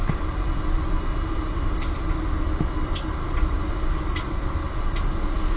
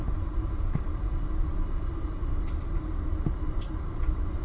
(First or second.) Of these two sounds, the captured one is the first